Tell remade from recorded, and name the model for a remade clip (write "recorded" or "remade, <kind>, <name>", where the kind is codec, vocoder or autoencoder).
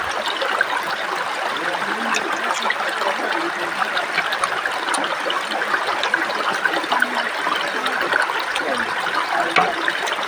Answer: recorded